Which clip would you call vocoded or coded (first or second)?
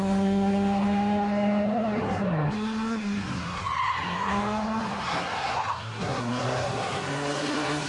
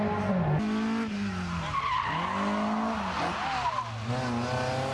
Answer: first